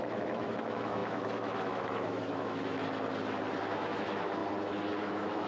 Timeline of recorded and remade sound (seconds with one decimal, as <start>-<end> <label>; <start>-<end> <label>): 0.0-2.8 remade; 2.8-3.6 recorded; 3.6-4.4 remade; 4.4-5.0 recorded; 5.0-5.5 remade